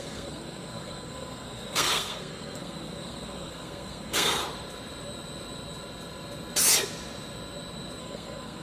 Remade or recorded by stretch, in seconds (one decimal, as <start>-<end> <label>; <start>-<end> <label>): 0.0-4.4 remade; 4.4-8.0 recorded; 8.0-8.6 remade